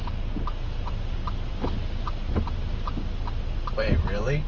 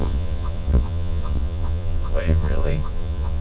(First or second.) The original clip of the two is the first